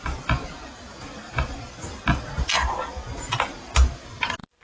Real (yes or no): yes